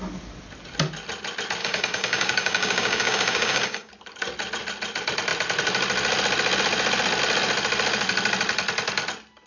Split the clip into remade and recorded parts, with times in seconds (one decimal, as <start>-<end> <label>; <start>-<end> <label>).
0.0-1.6 recorded; 1.6-3.9 remade; 3.9-9.5 recorded